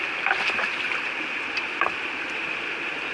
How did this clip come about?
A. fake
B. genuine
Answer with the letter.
B